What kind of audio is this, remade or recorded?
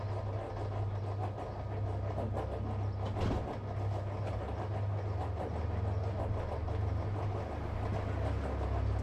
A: recorded